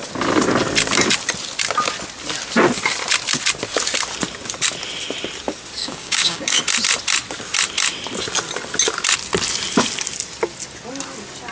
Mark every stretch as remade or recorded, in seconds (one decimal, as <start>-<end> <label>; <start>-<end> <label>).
0.0-5.8 recorded; 5.8-6.6 remade; 6.6-11.5 recorded